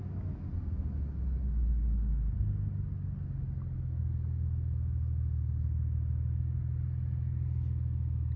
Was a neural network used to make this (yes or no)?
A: no